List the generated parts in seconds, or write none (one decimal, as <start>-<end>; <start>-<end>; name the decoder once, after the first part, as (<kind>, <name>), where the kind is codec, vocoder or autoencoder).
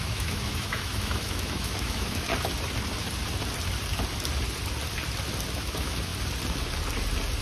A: 0.0-2.3 (autoencoder, DAC-VAE); 5.5-6.1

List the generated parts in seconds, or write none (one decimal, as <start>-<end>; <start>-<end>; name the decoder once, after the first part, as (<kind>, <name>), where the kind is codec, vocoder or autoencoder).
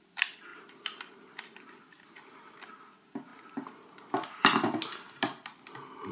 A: none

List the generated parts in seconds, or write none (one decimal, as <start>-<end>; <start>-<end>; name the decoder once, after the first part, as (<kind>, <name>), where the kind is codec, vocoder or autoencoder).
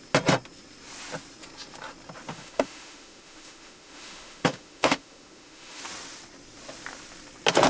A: 2.3-5.8 (autoencoder, DAC-VAE)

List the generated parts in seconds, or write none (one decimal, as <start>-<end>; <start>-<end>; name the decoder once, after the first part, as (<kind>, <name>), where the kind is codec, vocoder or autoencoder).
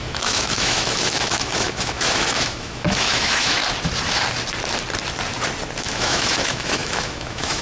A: 0.0-3.6 (autoencoder, DAC-VAE); 5.8-7.6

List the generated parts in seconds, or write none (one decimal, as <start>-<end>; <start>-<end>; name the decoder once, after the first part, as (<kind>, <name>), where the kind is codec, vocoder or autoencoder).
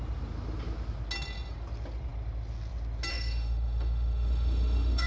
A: 3.1-5.1 (autoencoder, DAC-VAE)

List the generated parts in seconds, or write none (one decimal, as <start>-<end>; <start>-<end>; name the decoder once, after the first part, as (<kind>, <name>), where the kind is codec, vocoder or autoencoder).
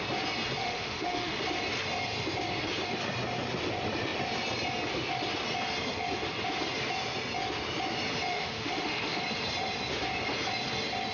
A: 0.6-1.4 (autoencoder, DAC-VAE); 8.3-9.2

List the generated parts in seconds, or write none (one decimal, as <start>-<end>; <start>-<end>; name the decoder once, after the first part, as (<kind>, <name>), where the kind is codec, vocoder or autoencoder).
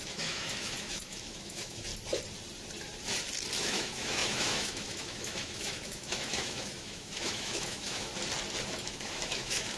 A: 0.0-1.9 (autoencoder, DAC-VAE); 3.6-8.1; 8.7-9.8